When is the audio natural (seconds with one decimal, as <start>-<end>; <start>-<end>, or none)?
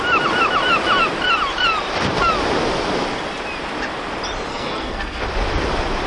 0.0-4.5; 5.2-6.1